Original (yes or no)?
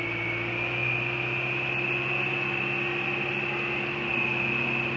yes